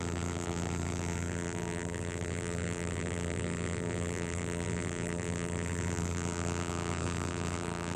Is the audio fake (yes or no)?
yes